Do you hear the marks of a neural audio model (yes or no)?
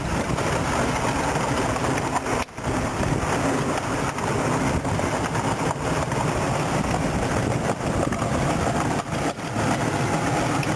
no